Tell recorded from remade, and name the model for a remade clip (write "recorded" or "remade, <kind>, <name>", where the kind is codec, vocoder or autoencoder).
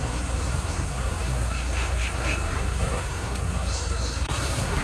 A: remade, codec, SNAC